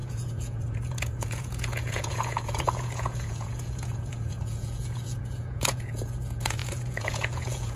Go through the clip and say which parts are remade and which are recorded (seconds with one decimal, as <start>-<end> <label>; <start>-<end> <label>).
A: 0.0-7.8 remade